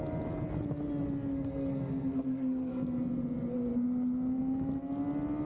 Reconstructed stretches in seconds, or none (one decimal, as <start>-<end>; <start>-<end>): 1.3-2.7